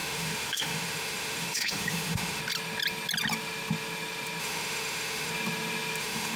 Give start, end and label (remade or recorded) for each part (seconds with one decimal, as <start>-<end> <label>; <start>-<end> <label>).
0.0-2.4 remade; 2.4-4.4 recorded; 4.4-5.3 remade; 5.3-6.0 recorded; 6.0-6.4 remade